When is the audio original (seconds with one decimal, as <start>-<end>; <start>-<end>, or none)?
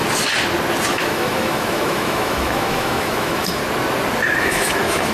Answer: 0.0-0.9; 3.6-4.4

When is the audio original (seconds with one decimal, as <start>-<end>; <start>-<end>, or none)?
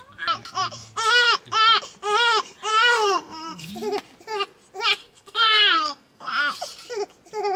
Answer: 0.0-2.7; 3.7-5.0; 6.3-7.6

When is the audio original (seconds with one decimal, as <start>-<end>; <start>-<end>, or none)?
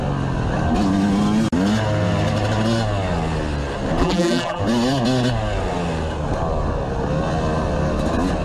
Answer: 0.0-4.0; 4.6-8.4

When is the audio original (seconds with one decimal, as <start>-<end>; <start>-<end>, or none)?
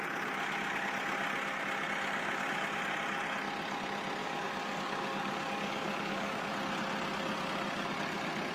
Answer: 0.0-4.2; 6.5-8.5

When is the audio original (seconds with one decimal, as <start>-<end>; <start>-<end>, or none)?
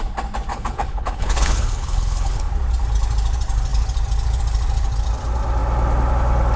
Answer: 0.0-0.5; 2.5-6.6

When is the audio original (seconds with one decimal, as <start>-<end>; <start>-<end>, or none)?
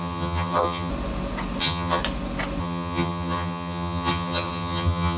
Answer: 0.9-1.6; 2.0-2.6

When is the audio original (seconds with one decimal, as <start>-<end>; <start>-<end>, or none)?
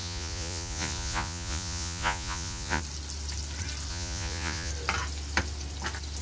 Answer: 2.8-3.9; 4.7-6.2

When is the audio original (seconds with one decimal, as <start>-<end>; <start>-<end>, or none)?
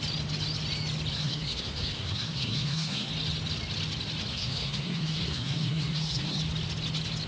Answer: 0.0-1.1; 3.1-4.3; 6.4-7.3